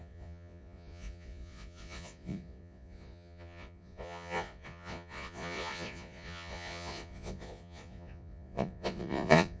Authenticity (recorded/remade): remade